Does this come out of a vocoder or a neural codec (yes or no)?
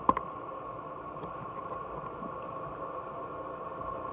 no